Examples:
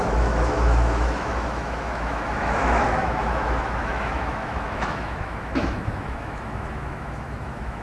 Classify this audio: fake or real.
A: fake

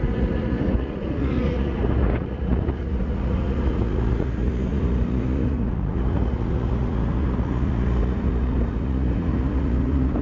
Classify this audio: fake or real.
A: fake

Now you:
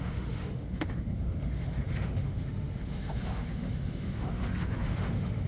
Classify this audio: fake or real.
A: fake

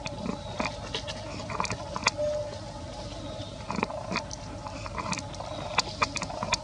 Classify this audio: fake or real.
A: real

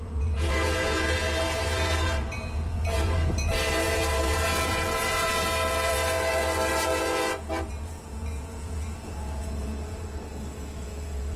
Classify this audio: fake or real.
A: fake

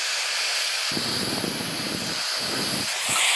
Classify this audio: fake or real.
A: real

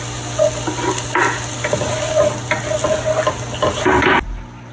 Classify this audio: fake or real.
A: real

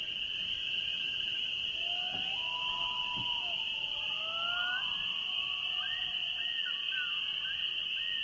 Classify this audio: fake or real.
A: real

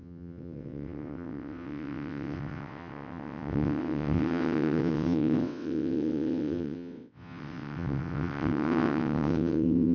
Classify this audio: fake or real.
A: fake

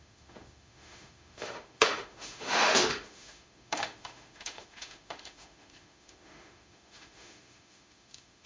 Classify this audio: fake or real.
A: fake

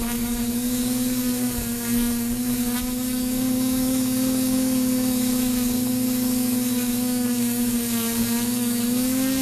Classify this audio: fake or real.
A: fake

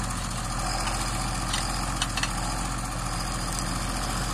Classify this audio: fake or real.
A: real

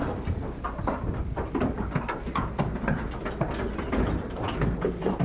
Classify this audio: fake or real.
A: real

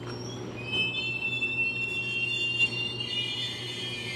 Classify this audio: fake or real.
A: real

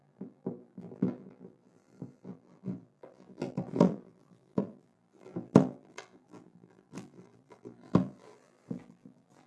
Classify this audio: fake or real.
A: fake